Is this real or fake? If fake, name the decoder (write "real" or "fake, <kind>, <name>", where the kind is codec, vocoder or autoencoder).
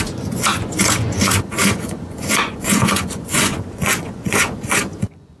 fake, vocoder, Vocos